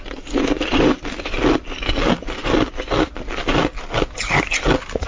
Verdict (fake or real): real